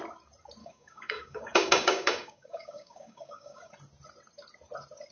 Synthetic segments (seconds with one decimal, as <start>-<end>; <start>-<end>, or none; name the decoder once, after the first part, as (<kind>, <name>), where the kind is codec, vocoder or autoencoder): 0.6-3.7 (codec, DAC)